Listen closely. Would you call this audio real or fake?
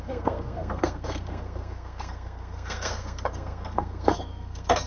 fake